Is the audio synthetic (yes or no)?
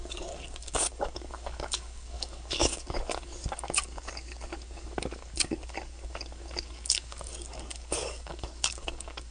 yes